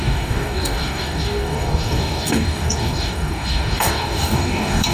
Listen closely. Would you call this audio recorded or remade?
remade